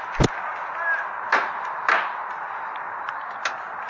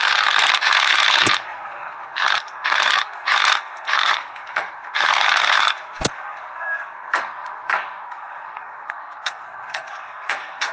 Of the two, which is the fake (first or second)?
second